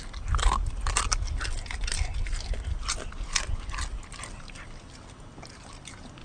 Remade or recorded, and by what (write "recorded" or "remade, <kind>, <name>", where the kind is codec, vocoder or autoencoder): recorded